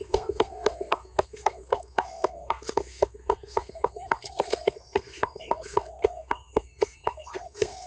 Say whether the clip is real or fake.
fake